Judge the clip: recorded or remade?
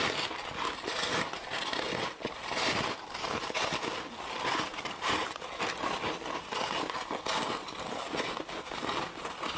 recorded